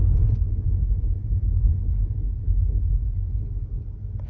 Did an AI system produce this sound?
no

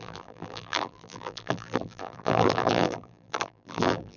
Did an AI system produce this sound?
yes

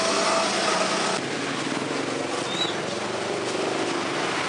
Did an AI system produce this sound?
no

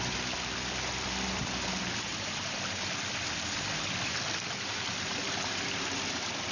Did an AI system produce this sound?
no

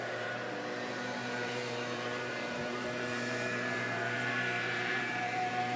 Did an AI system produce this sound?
yes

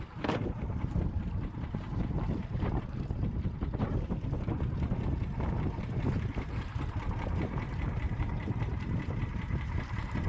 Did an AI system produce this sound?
yes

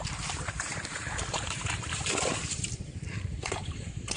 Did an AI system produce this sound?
yes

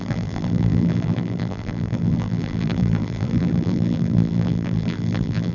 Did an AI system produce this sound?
yes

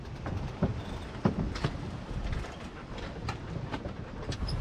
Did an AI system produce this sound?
yes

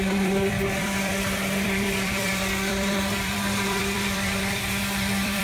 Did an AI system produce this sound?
yes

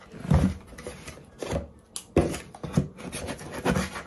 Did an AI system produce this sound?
no